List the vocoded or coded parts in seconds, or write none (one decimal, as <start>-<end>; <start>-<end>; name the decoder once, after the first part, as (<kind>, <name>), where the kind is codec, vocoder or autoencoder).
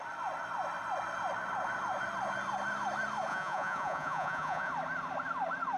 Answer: 3.3-4.7 (vocoder, Vocos)